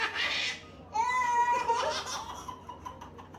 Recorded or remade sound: recorded